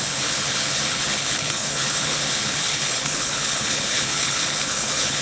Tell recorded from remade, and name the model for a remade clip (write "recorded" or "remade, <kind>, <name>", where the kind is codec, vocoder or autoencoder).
remade, codec, HILCodec